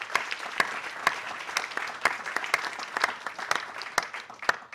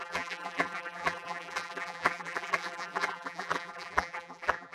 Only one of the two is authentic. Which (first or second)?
first